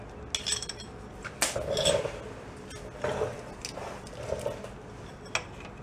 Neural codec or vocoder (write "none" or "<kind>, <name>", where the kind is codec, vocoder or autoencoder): none